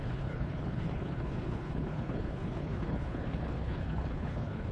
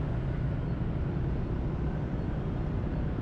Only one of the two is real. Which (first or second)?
second